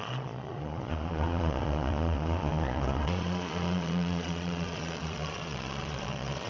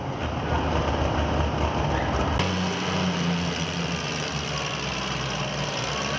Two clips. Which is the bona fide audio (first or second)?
second